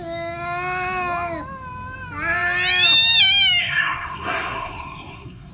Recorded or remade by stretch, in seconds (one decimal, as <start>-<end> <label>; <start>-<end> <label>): 0.0-3.6 recorded; 3.6-5.5 remade